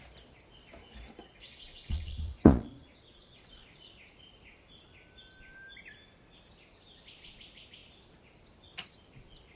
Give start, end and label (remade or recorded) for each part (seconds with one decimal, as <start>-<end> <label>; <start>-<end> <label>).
0.0-1.2 recorded; 1.2-3.6 remade; 3.6-9.6 recorded